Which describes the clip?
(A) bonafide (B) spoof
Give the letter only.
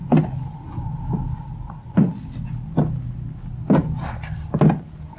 A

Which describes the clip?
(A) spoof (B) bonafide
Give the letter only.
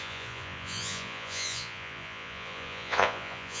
A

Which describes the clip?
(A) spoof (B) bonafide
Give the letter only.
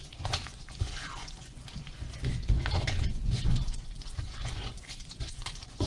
A